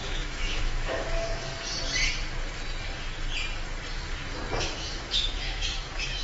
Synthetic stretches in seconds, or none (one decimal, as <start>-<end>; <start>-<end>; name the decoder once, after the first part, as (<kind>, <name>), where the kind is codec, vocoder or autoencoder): 0.0-1.5 (autoencoder, DAC-VAE); 4.6-6.2